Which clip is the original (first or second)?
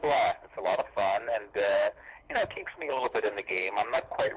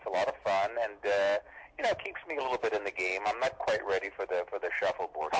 second